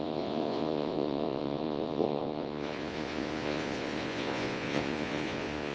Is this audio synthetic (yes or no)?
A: yes